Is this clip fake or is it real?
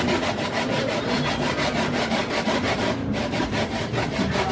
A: fake